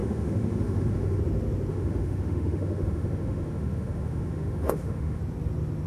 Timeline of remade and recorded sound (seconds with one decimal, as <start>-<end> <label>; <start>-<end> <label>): 0.0-1.2 remade; 1.2-1.7 recorded; 1.7-5.2 remade; 5.2-5.9 recorded